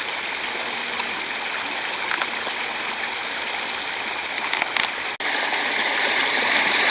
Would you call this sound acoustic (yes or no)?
yes